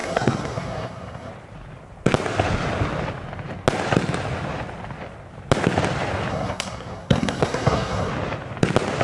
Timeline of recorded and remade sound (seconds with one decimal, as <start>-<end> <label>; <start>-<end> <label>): 0.0-1.3 remade; 1.3-6.3 recorded; 6.3-8.1 remade; 8.1-9.0 recorded